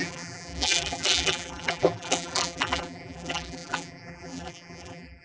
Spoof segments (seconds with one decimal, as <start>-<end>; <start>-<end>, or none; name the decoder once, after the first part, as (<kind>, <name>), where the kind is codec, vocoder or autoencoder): 0.0-5.2 (vocoder, BigVGAN v2)